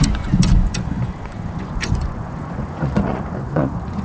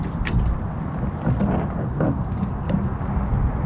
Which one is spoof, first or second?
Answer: first